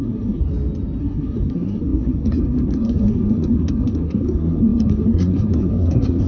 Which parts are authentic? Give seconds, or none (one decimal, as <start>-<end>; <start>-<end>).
0.5-1.0